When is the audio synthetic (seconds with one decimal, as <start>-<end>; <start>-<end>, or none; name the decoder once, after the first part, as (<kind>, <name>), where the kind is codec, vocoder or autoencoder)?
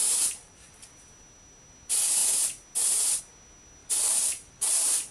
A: 0.0-0.9 (vocoder, BigVGAN v2); 3.8-5.1